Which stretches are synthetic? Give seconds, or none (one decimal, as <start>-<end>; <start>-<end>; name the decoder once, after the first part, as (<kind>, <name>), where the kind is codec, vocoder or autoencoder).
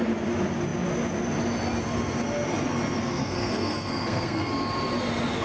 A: 3.0-4.5 (codec, SNAC)